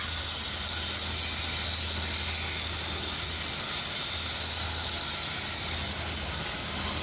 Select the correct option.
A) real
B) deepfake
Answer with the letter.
A